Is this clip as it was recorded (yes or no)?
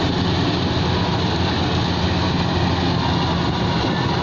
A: yes